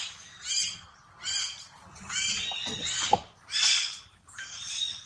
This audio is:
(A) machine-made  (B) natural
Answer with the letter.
B